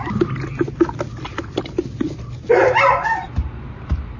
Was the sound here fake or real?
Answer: real